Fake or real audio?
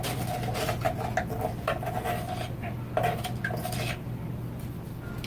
real